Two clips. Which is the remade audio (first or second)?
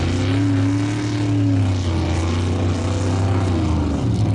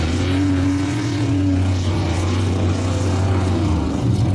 second